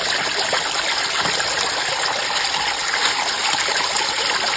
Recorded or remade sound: remade